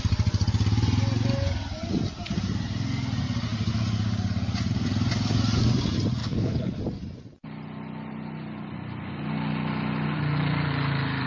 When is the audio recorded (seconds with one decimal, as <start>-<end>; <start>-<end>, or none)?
0.0-6.2; 6.8-11.3